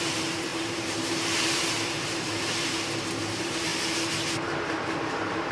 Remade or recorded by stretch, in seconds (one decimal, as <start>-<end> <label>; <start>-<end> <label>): 0.0-3.7 remade; 3.7-4.3 recorded; 4.3-5.5 remade